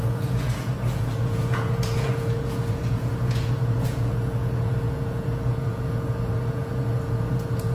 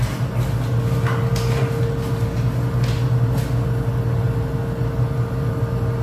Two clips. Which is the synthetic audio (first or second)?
first